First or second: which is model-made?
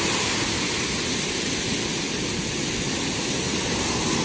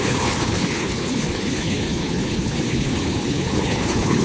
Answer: second